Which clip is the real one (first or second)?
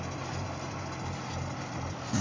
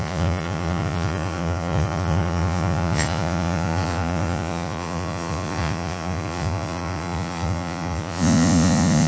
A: first